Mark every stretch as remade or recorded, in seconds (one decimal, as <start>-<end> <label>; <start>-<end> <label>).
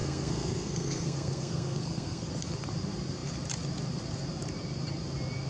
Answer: 0.0-2.3 remade; 2.3-5.5 recorded